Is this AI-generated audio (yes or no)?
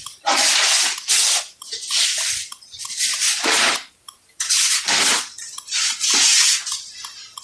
no